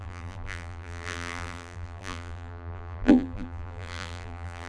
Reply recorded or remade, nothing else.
remade